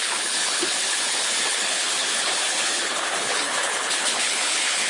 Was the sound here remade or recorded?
remade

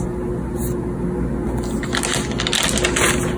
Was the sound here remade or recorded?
recorded